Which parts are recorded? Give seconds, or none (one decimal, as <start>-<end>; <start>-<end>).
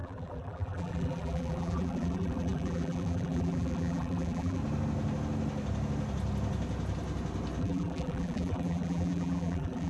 4.6-7.6